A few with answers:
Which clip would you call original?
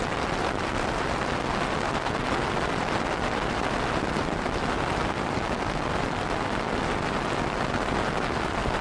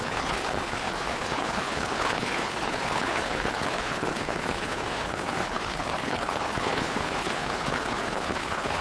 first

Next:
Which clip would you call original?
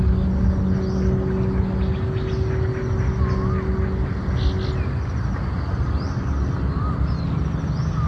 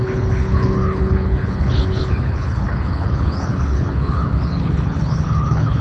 first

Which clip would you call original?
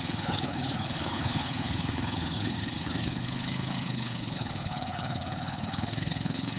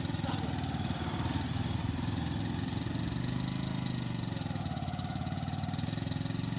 second